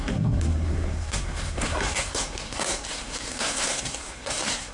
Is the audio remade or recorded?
remade